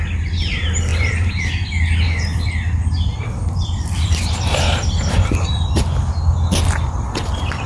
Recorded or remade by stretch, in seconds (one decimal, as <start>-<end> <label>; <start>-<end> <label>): 0.0-0.9 recorded; 0.9-1.4 remade; 1.4-2.3 recorded; 2.3-5.8 remade; 5.8-7.7 recorded